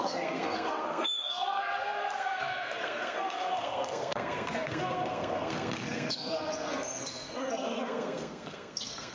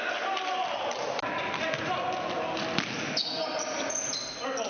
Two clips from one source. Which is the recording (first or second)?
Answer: second